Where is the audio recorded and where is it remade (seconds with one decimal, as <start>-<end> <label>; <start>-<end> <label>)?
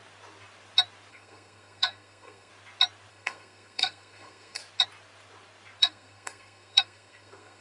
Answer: 0.0-1.1 recorded; 1.1-2.5 remade; 2.5-3.1 recorded; 3.1-4.6 remade; 4.6-5.8 recorded; 5.8-7.6 remade